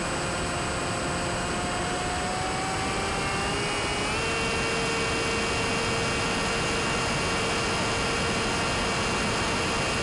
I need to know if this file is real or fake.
real